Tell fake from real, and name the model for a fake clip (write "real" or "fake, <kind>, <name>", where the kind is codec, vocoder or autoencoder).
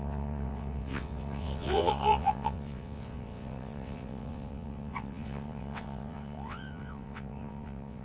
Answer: fake, vocoder, WaveNeXt